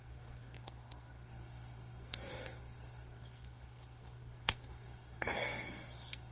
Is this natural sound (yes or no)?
no